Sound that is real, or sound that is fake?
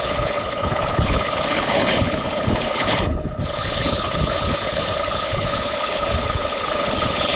fake